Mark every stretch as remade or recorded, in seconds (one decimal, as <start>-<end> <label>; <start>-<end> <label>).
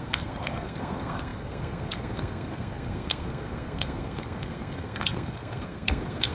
0.0-6.3 remade